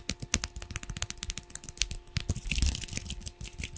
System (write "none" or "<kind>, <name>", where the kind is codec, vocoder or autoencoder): none